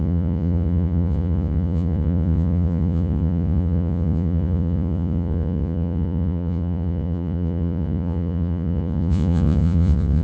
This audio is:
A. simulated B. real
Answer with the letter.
A